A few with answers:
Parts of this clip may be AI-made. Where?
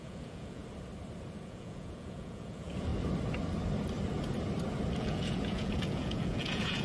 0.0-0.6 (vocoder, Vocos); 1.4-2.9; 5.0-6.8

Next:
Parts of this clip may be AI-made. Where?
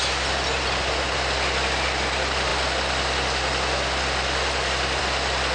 none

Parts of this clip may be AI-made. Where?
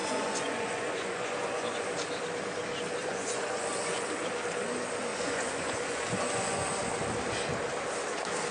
0.0-1.9 (vocoder, Vocos); 3.0-4.1; 5.1-6.9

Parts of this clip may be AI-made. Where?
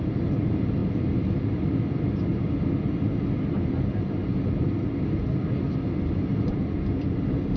none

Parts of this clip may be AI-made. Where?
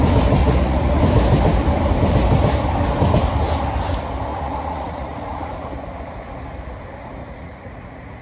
0.4-1.0 (vocoder, Vocos); 4.3-5.7; 7.2-8.2